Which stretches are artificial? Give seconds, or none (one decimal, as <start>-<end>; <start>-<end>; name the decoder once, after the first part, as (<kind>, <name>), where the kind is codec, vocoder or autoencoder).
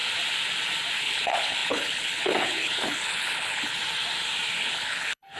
1.0-3.8 (codec, HILCodec); 4.6-5.4